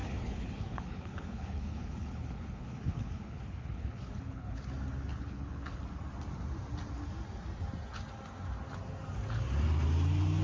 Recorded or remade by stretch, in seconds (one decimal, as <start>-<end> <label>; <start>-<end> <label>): 0.0-4.6 remade; 4.6-5.1 recorded; 5.1-5.8 remade; 5.8-10.4 recorded